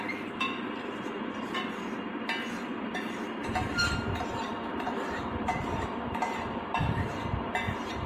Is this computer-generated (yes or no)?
yes